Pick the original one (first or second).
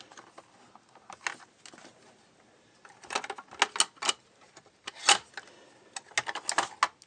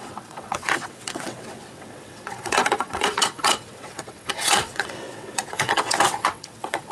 first